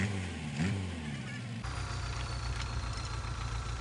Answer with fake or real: real